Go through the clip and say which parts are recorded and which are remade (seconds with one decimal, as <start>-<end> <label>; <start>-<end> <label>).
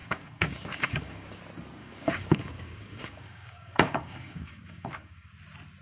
0.0-1.4 remade; 1.4-1.8 recorded; 1.8-5.3 remade; 5.3-5.8 recorded